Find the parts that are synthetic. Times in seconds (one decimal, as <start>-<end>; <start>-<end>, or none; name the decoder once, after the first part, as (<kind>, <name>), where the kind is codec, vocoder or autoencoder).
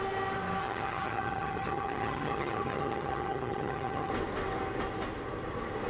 0.6-4.1 (vocoder, HiFi-GAN)